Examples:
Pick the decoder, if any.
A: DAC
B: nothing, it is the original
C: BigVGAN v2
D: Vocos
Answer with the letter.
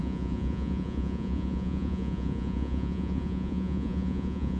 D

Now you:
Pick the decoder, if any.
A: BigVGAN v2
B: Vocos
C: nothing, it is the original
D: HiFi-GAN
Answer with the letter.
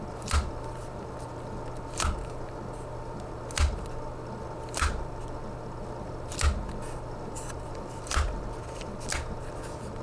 C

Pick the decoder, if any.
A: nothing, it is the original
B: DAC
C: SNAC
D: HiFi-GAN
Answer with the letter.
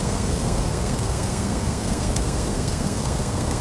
C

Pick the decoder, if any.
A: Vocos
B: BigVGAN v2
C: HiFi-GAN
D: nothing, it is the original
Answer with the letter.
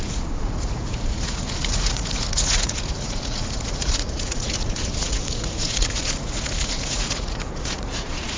A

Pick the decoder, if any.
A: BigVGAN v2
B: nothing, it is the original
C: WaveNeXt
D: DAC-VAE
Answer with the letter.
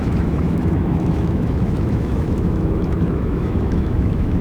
D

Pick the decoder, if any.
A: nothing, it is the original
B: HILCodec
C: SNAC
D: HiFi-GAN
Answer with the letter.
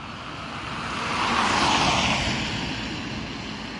A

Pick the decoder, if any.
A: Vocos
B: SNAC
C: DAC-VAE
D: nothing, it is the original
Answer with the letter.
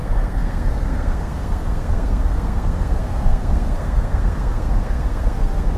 B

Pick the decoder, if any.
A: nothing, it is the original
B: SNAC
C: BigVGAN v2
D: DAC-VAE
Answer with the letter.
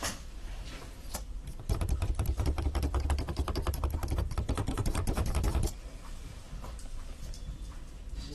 C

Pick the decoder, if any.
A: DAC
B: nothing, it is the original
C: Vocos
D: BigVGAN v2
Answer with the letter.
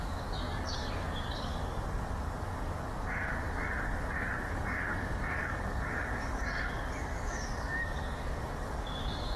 A